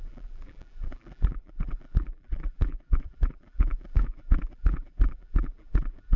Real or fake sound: fake